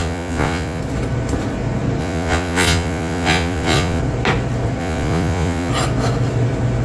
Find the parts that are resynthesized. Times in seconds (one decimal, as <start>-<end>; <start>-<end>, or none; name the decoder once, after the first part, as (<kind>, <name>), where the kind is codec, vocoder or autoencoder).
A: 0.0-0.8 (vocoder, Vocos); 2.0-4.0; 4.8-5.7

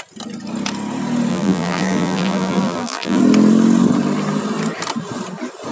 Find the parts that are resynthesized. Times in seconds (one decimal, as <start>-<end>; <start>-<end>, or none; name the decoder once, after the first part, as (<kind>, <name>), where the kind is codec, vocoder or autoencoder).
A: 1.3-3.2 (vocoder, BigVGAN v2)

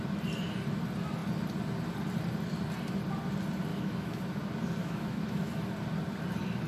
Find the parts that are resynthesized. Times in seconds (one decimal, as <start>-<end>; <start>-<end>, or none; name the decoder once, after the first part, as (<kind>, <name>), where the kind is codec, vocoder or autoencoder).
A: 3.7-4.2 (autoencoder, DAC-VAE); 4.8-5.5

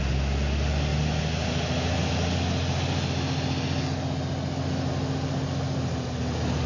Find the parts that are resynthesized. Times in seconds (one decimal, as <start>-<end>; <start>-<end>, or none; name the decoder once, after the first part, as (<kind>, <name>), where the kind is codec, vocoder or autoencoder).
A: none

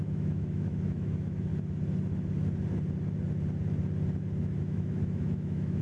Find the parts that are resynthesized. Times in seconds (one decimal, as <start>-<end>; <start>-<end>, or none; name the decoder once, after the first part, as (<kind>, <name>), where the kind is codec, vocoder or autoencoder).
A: 0.0-1.5 (autoencoder, DAC-VAE); 4.6-5.8